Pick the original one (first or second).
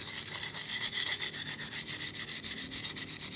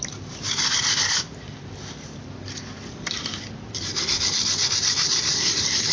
first